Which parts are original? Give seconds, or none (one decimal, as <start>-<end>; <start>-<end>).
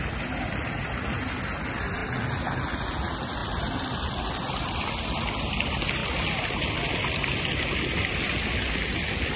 0.0-9.4